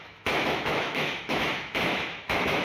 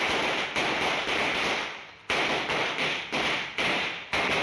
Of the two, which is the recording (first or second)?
second